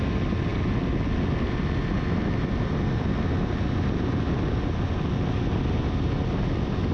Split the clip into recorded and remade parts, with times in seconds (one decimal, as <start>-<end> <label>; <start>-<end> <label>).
0.0-6.9 recorded